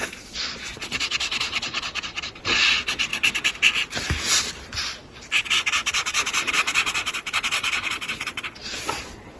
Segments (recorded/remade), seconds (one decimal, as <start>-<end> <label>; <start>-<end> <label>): 0.0-3.1 remade; 3.1-5.4 recorded; 5.4-9.4 remade